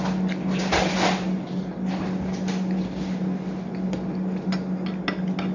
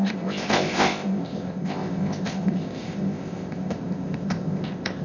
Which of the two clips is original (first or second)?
first